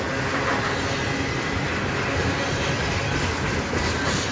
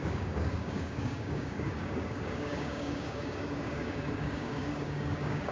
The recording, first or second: first